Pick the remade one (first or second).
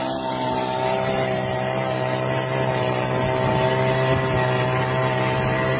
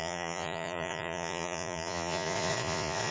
second